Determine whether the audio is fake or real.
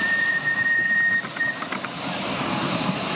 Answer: fake